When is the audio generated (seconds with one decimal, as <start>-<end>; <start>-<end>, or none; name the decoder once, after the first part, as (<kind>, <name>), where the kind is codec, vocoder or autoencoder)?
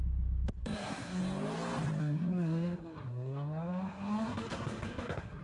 0.6-1.2 (codec, SNAC); 2.0-5.4